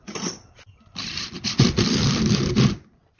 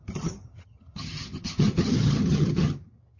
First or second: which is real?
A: first